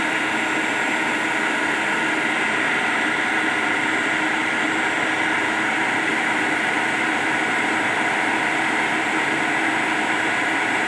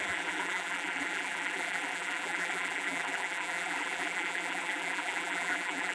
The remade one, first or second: second